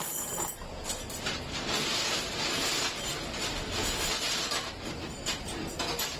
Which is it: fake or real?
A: real